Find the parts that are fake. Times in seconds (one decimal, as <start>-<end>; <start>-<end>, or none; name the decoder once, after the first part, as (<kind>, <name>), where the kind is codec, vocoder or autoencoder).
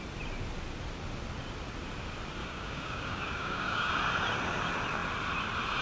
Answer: 2.4-3.9 (codec, DAC)